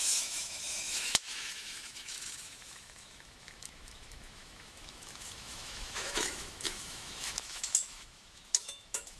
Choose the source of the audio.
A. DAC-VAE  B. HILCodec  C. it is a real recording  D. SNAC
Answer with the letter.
A